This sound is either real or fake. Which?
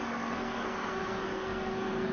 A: fake